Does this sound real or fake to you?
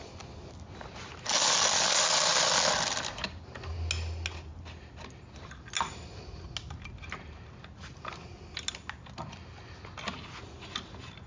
real